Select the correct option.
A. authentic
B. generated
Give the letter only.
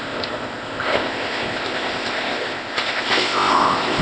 B